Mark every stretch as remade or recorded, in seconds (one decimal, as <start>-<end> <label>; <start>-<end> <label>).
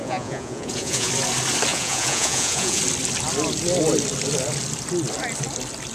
0.0-1.1 remade; 1.1-1.7 recorded; 1.7-2.8 remade; 2.8-5.9 recorded